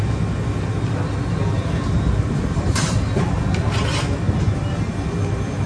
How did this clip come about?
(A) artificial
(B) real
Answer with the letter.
B